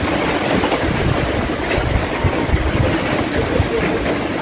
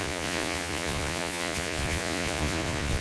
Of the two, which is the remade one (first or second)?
second